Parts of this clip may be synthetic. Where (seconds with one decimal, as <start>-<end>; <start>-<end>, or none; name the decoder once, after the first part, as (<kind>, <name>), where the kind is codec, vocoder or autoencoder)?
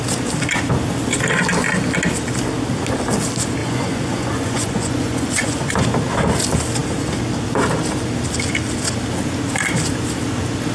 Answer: 3.6-5.7 (vocoder, Vocos)